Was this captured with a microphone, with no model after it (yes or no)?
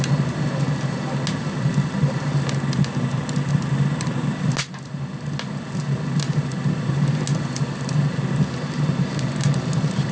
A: yes